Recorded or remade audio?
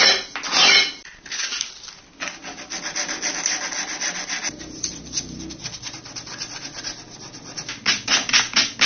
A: recorded